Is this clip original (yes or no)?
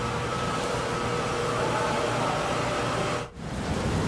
no